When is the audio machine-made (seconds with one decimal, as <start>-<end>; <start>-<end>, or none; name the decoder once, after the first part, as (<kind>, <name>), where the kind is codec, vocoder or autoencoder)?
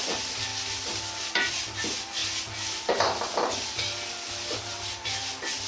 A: 0.0-0.5 (vocoder, BigVGAN v2); 1.5-2.2